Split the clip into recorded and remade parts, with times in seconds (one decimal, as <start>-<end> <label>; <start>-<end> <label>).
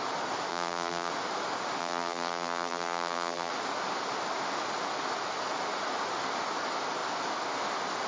0.0-0.5 recorded; 0.5-1.1 remade; 1.1-1.8 recorded; 1.8-3.5 remade; 3.5-8.1 recorded